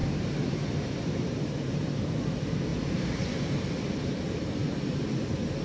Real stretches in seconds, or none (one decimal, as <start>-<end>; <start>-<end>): 2.1-2.7; 3.2-5.6